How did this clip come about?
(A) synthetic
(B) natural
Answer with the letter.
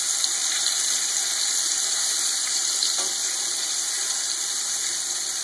A